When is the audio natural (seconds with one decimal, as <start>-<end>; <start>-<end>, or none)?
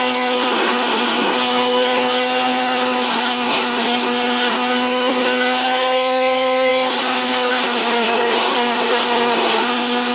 none